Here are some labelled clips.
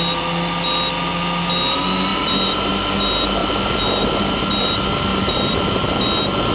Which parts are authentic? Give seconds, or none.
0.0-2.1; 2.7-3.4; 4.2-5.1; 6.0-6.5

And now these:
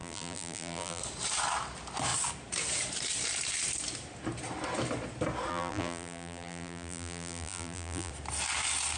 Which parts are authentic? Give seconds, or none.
1.0-5.5; 8.1-9.0

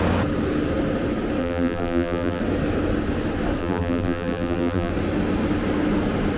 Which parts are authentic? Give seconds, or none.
0.0-1.4; 2.4-3.6; 4.9-6.4

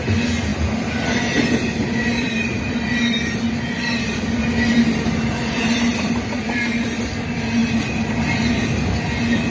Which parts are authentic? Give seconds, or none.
0.0-0.5; 2.9-5.9; 6.6-9.5

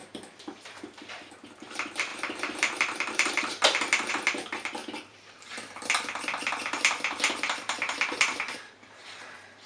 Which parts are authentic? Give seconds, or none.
none

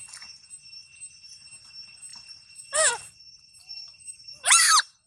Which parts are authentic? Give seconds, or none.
0.0-2.1; 2.9-3.6; 4.6-5.1

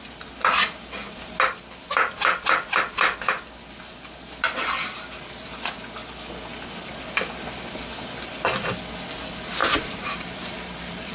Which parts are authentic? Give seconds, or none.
0.0-9.6

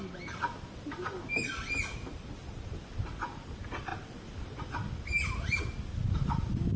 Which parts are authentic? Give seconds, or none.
0.0-2.1; 2.8-6.8